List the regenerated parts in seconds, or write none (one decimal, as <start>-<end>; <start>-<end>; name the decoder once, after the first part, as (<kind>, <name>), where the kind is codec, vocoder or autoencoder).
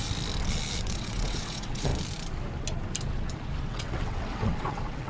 0.8-1.9 (vocoder, WaveNeXt); 3.7-5.1